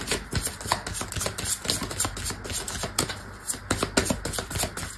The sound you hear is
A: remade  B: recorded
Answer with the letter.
B